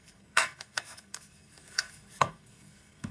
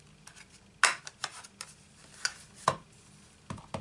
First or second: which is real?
second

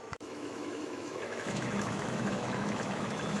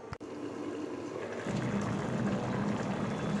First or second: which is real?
second